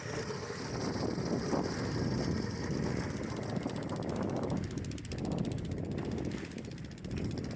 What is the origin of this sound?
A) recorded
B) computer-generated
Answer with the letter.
A